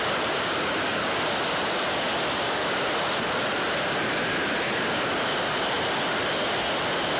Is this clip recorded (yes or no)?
yes